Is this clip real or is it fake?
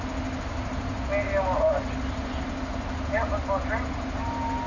real